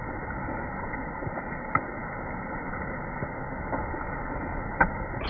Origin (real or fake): real